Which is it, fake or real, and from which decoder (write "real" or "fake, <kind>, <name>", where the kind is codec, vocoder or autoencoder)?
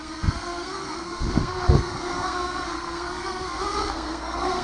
fake, codec, SNAC